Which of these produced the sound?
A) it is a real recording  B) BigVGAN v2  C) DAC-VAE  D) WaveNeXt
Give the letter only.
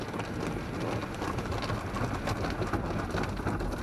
A